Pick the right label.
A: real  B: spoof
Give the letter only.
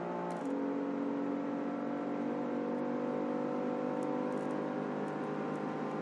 A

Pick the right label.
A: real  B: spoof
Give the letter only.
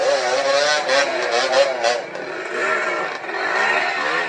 A